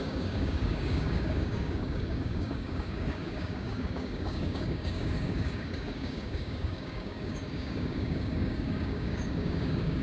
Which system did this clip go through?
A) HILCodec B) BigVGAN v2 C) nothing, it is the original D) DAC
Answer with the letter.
D